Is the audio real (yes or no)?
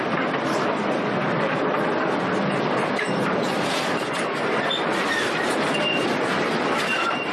no